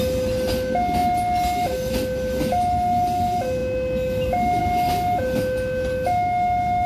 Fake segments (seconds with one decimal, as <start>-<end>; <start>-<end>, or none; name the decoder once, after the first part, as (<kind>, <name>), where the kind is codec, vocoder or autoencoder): none